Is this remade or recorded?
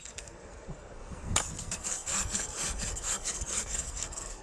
remade